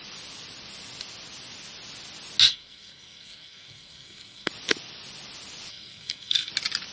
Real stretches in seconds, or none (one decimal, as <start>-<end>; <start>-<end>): 0.0-2.5; 4.5-5.7; 6.5-6.9